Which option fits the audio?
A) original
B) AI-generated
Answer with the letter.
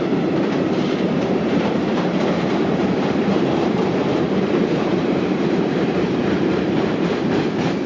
B